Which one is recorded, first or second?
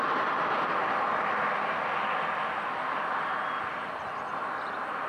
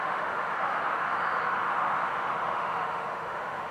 first